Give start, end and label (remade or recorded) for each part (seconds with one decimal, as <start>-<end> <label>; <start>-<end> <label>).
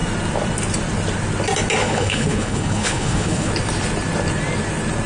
0.0-1.8 recorded; 1.8-3.5 remade; 3.5-5.1 recorded